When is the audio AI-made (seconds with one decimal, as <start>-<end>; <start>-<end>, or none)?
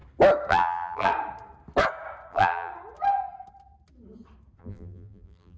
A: 0.5-1.1; 2.3-2.7; 4.6-5.6